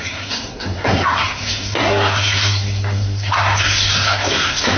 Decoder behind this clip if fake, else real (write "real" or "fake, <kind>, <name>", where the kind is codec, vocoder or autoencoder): fake, codec, SNAC